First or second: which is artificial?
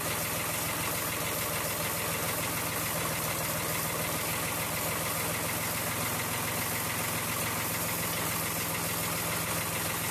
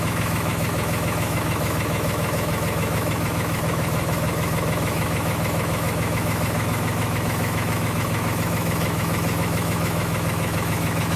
second